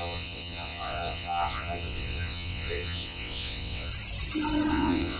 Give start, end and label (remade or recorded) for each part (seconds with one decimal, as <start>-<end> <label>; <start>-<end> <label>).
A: 0.0-3.9 remade; 3.9-4.7 recorded; 4.7-5.2 remade